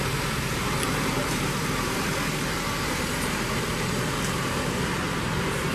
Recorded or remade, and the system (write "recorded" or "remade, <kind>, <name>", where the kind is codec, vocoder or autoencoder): remade, vocoder, BigVGAN v2